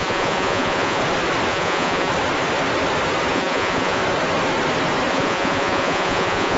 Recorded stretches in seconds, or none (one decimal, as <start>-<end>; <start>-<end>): 1.0-1.5; 2.1-3.3; 4.0-5.1